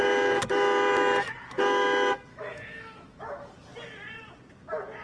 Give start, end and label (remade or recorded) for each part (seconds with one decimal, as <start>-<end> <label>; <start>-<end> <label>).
0.0-2.3 recorded; 2.3-3.5 remade; 3.5-5.0 recorded